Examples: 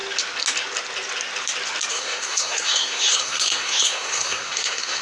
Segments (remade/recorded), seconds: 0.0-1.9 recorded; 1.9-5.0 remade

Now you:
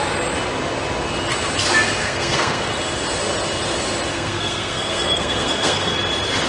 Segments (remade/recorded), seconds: 0.0-2.0 recorded; 2.0-2.7 remade; 2.7-4.1 recorded; 4.1-6.0 remade; 6.0-6.5 recorded